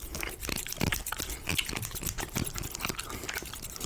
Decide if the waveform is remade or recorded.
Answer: remade